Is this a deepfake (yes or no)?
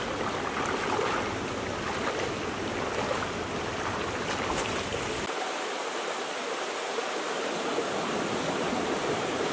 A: no